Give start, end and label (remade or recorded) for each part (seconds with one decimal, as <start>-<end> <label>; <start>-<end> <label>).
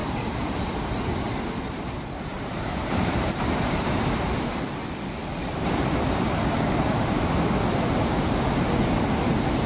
0.0-0.7 remade; 0.7-2.3 recorded; 2.3-4.4 remade; 4.4-5.3 recorded; 5.3-6.3 remade; 6.3-9.7 recorded